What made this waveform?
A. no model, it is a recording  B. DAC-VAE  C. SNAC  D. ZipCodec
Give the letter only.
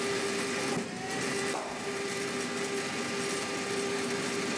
A